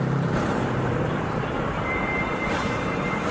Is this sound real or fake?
fake